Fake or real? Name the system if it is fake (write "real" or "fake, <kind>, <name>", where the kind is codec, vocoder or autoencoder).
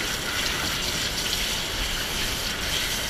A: real